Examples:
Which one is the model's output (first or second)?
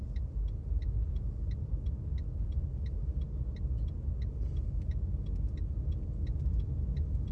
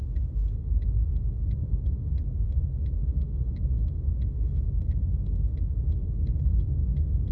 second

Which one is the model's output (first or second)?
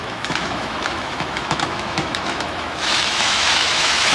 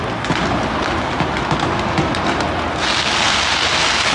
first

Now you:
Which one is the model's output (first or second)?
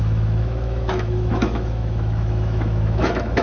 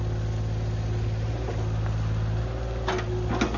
first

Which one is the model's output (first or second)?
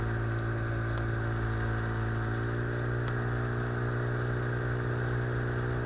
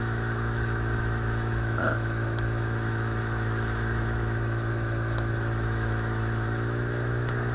second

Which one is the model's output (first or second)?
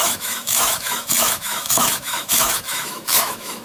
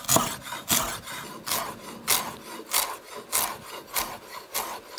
first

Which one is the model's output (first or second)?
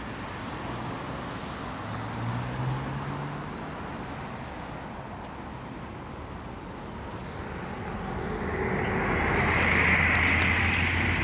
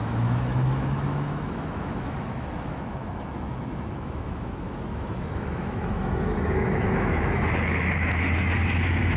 second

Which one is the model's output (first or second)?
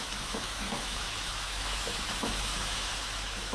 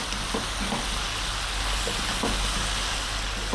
first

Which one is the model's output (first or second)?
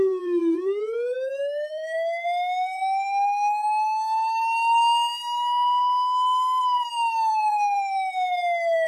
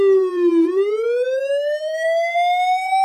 first